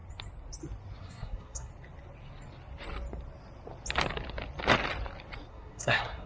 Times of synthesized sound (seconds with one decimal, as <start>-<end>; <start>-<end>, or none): 1.0-1.7; 5.5-6.3